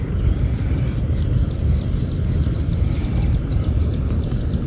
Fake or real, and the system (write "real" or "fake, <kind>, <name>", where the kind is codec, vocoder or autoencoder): real